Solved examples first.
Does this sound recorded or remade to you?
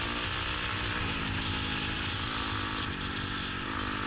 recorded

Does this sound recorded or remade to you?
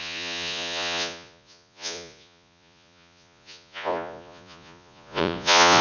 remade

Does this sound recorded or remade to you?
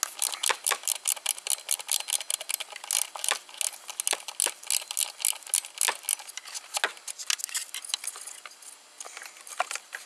recorded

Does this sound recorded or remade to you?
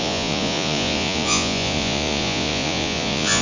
remade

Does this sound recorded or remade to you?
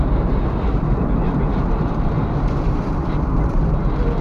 recorded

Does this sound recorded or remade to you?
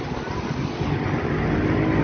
recorded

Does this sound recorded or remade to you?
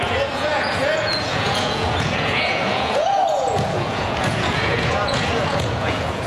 remade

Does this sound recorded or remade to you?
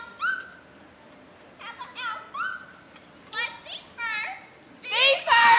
recorded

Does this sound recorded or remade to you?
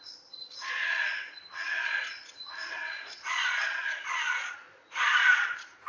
remade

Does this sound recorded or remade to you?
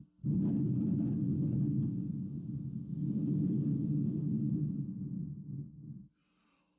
recorded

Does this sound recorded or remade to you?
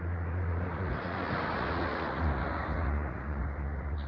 remade